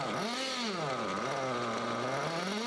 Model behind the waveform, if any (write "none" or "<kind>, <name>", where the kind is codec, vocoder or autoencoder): none